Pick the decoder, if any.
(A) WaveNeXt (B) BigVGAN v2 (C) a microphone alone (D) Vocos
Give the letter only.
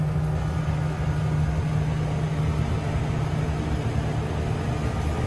C